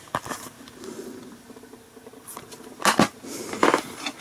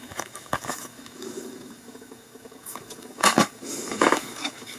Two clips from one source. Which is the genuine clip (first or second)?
first